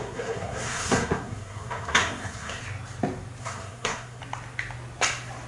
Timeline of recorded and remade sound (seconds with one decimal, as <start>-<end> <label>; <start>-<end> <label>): 0.0-2.6 remade; 2.6-3.4 recorded; 3.4-4.2 remade; 4.2-5.5 recorded